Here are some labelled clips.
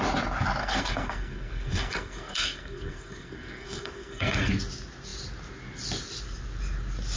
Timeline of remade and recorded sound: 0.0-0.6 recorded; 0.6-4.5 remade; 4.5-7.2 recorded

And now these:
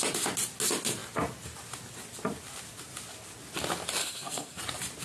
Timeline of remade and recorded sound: 0.0-4.0 recorded; 4.0-4.6 remade; 4.6-5.0 recorded

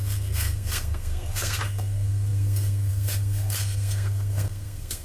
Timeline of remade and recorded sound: 0.0-5.0 remade

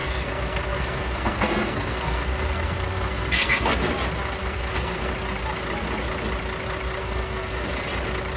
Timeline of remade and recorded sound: 0.0-3.9 remade; 3.9-4.4 recorded; 4.4-5.1 remade; 5.1-7.0 recorded; 7.0-7.7 remade; 7.7-8.4 recorded